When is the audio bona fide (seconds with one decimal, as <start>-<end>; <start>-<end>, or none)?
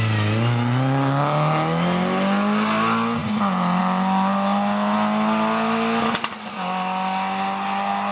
0.0-8.1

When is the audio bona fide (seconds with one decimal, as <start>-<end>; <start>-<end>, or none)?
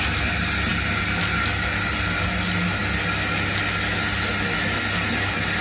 0.0-5.6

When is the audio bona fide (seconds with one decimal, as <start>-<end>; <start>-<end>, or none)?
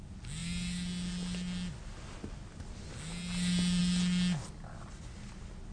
0.0-5.7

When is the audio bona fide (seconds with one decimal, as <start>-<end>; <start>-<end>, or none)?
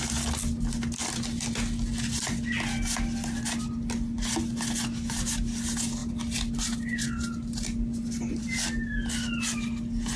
0.0-10.2